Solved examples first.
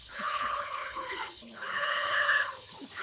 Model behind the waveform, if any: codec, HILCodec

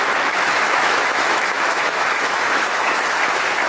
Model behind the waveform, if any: autoencoder, DAC-VAE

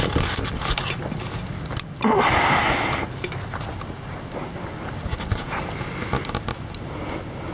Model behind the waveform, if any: none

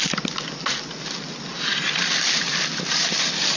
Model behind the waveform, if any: none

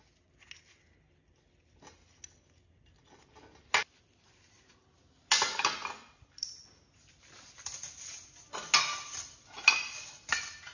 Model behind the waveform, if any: none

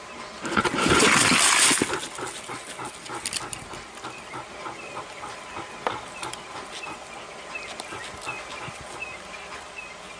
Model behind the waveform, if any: none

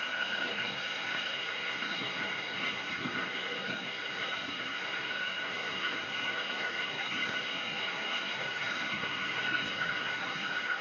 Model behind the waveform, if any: codec, SNAC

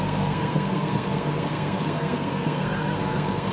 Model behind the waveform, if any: codec, SNAC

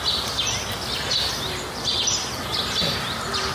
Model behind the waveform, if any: none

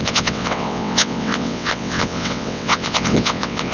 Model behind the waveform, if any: vocoder, WaveNeXt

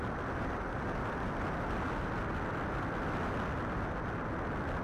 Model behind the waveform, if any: none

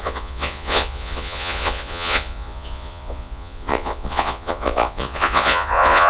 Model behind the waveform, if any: vocoder, Vocos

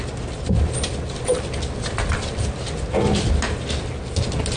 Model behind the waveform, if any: none